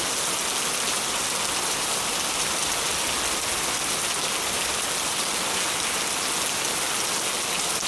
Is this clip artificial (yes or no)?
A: no